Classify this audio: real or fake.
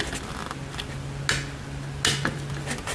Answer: real